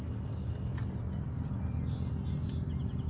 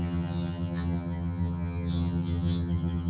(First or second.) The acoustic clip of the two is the first